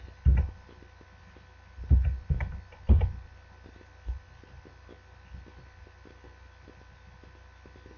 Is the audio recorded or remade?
recorded